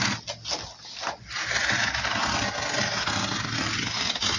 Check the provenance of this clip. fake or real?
real